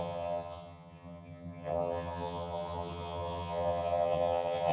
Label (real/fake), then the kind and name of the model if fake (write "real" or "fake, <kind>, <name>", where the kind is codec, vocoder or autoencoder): fake, vocoder, HiFi-GAN